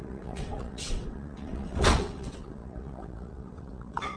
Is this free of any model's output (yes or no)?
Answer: no